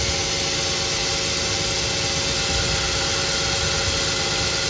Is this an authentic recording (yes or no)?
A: yes